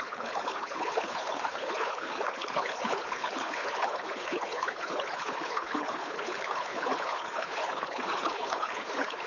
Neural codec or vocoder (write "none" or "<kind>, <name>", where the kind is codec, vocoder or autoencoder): codec, HILCodec